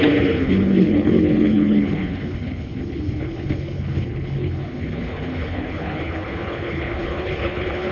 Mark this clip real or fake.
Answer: fake